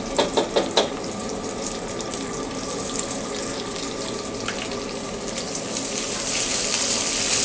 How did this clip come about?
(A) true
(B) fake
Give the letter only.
A